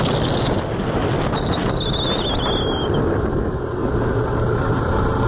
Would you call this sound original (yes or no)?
yes